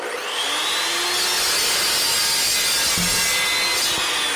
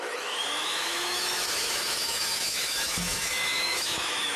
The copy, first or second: second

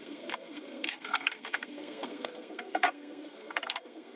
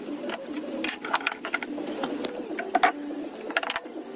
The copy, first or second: first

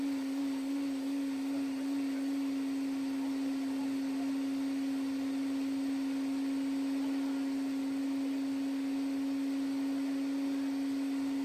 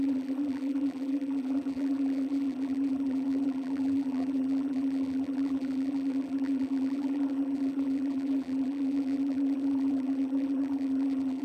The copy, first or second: second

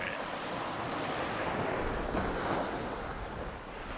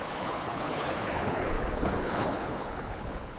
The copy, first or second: second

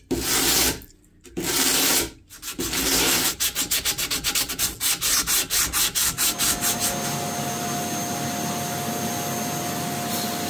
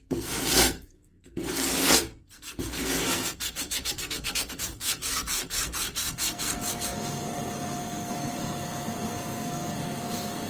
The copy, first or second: second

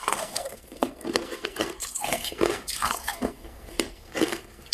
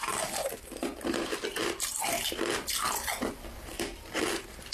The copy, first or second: first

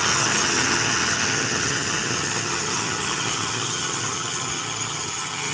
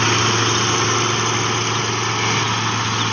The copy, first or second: first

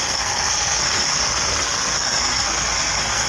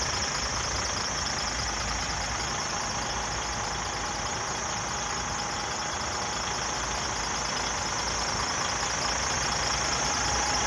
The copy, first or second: first